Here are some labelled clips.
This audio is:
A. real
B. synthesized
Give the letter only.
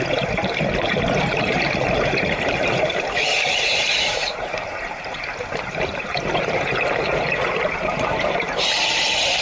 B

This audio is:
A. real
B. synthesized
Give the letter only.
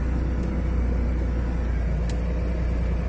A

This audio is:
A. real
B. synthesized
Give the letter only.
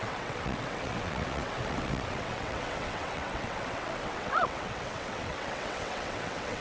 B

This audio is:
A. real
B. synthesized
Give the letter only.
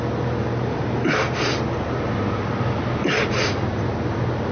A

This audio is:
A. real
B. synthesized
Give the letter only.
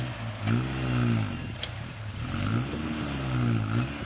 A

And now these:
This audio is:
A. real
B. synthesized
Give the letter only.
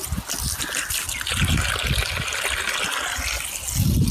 A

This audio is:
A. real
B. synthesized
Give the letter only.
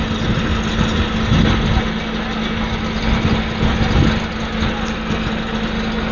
A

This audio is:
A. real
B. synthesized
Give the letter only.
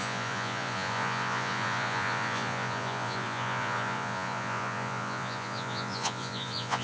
B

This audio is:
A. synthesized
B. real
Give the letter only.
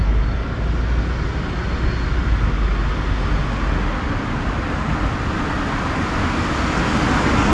B